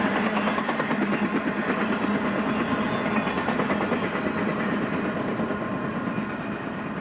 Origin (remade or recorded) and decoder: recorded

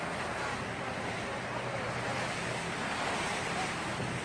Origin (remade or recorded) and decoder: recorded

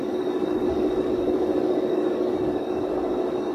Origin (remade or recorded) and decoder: remade, codec, DAC